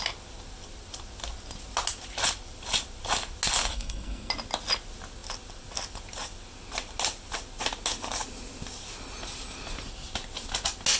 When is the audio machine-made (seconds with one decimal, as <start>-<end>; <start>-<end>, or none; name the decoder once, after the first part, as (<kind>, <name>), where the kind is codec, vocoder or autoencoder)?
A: 3.7-4.3 (codec, SNAC)